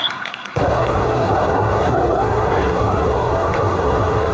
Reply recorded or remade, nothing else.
remade